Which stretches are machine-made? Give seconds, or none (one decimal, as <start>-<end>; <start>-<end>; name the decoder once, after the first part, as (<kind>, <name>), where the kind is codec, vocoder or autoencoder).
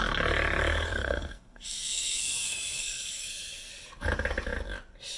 1.0-3.7 (codec, SNAC)